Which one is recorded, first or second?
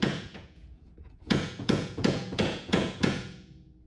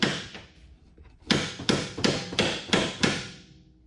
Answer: second